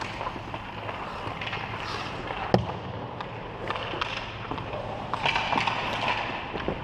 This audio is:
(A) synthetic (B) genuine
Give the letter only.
B